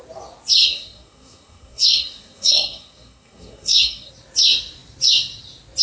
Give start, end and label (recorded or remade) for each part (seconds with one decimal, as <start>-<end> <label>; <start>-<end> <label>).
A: 0.0-0.6 recorded; 0.6-4.1 remade; 4.1-5.8 recorded